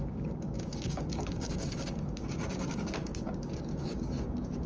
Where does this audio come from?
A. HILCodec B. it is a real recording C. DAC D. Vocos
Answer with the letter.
C